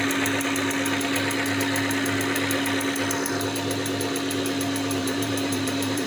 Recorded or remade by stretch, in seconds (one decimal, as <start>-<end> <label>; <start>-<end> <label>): 0.0-5.0 recorded; 5.0-6.1 remade